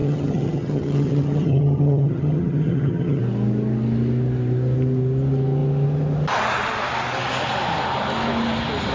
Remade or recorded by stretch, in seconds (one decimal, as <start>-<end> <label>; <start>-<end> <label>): 0.0-3.2 remade; 3.2-8.9 recorded